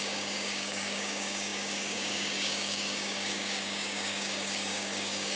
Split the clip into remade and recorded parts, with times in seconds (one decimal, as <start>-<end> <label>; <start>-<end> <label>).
0.0-5.4 remade